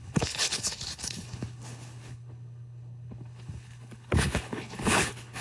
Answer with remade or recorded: remade